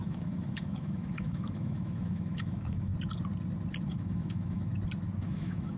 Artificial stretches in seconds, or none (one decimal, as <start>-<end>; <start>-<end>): 0.0-2.9; 3.9-4.7; 5.2-5.8